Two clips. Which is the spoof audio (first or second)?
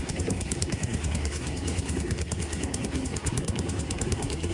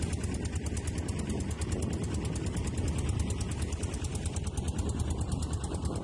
first